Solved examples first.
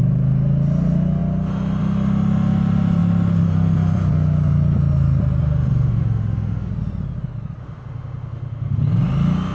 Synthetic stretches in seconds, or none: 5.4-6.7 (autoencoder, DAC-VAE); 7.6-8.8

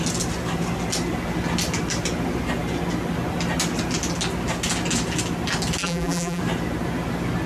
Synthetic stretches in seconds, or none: 5.8-6.4 (vocoder, BigVGAN v2)

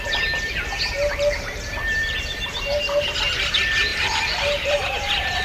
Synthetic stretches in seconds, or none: 1.1-3.2 (vocoder, BigVGAN v2); 3.9-5.4

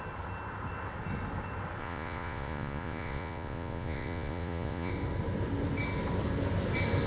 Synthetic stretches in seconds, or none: 1.8-4.9 (vocoder, Vocos)

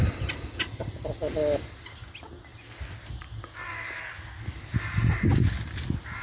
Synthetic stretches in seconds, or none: none

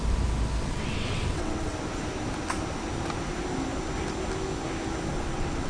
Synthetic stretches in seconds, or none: 0.6-1.7 (vocoder, WaveNeXt); 5.1-5.7